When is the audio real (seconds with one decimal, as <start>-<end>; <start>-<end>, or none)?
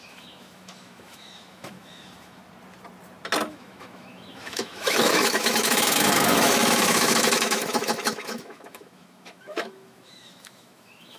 2.4-3.5